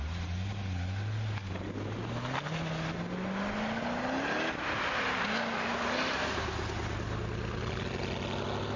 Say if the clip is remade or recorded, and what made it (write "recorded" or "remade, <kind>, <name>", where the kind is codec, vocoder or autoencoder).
recorded